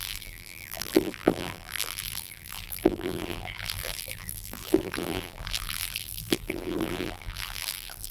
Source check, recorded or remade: remade